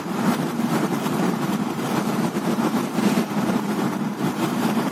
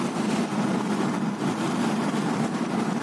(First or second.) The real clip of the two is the second